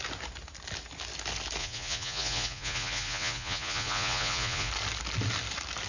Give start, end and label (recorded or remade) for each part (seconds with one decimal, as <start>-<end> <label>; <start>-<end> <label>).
0.0-1.6 recorded; 1.6-4.7 remade; 4.7-5.9 recorded